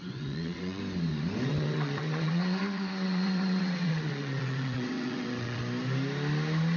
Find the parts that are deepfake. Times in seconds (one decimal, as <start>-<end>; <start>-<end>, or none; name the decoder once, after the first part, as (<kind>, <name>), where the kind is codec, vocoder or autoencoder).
0.0-0.8 (vocoder, WaveNeXt); 1.5-5.6